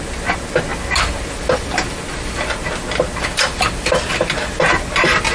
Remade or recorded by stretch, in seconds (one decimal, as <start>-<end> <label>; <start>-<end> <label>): 0.0-5.3 recorded